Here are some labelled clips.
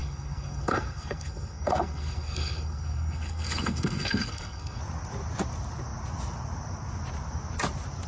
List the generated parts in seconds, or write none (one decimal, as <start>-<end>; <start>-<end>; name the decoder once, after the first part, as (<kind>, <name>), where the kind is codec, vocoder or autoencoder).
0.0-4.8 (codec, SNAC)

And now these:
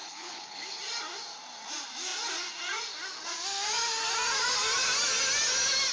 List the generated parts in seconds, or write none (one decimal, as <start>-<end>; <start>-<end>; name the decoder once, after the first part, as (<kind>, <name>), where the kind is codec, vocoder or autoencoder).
0.0-0.8 (codec, HILCodec)

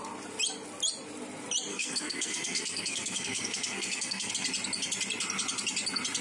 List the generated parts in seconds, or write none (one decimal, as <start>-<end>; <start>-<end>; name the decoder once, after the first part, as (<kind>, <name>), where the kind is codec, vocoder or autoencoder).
1.7-4.3 (codec, SNAC)